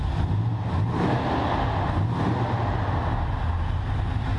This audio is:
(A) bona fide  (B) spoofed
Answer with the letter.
A